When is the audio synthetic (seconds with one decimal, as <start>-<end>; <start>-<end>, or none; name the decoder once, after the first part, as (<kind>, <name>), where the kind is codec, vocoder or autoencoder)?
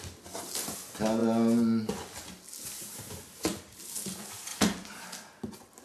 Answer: none